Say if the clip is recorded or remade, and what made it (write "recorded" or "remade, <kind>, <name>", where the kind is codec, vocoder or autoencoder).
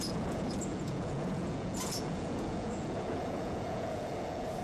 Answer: remade, vocoder, Vocos